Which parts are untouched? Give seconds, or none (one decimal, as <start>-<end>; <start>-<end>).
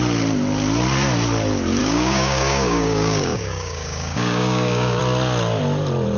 0.0-1.8; 5.0-6.2